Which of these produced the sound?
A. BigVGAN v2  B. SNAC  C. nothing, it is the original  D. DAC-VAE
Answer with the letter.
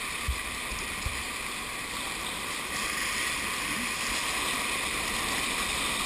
C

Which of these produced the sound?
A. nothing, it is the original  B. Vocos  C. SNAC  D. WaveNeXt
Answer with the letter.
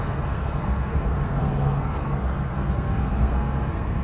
C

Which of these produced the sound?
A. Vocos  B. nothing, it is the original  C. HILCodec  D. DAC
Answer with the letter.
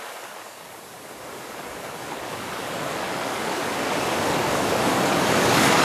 D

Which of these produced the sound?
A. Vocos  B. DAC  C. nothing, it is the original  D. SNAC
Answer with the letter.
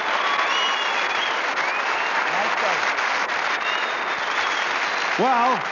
C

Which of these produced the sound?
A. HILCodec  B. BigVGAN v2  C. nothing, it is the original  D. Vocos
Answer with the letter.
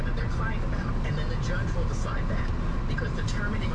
C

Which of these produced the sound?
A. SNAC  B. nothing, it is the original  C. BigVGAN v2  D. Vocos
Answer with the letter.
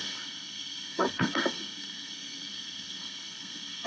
A